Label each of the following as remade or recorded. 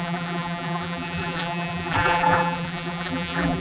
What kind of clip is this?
remade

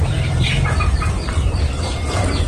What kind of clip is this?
remade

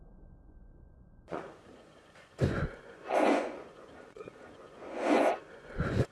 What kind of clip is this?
remade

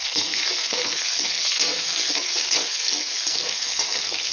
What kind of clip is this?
remade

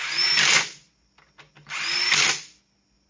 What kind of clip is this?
recorded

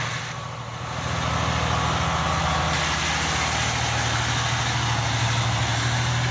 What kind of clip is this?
recorded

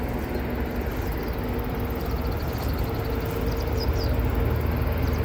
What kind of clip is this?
recorded